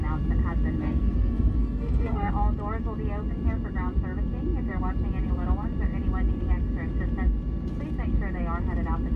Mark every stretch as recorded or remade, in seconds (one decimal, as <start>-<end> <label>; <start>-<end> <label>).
0.0-0.8 recorded; 0.8-2.3 remade; 2.3-9.2 recorded